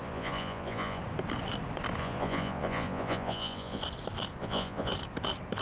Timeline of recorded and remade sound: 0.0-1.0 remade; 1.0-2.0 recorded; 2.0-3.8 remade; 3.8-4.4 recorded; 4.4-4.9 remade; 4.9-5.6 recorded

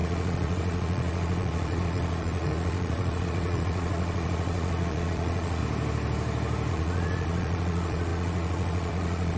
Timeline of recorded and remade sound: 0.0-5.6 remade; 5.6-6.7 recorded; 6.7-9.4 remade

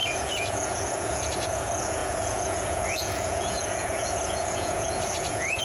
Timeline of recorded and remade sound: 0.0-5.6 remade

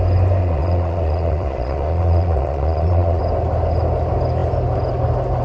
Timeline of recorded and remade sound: 0.0-0.4 recorded; 0.4-3.2 remade; 3.2-5.4 recorded

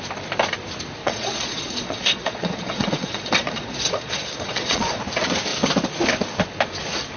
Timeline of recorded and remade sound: 0.0-1.0 recorded; 1.0-5.0 remade; 5.0-7.2 recorded